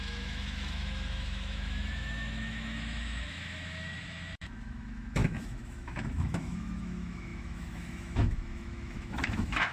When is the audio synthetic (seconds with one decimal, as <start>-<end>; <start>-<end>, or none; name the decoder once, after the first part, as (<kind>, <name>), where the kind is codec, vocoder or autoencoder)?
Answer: 0.0-9.7 (autoencoder, DAC-VAE)